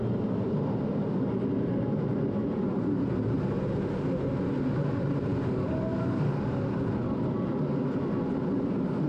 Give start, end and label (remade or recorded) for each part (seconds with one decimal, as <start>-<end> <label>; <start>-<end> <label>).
0.0-5.3 recorded; 5.3-6.8 remade; 6.8-9.1 recorded